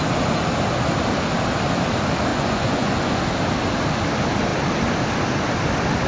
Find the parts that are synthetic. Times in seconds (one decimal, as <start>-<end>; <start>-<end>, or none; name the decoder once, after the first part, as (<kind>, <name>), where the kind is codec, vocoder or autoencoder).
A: 2.3-3.2 (vocoder, Vocos)